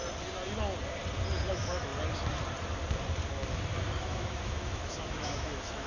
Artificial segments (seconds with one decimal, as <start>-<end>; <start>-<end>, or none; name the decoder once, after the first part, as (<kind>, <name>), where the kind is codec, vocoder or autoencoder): 1.5-1.9 (autoencoder, DAC-VAE); 4.0-5.9